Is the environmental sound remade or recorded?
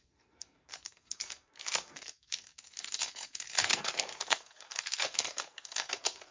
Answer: remade